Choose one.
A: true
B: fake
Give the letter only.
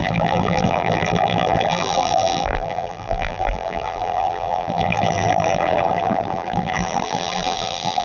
B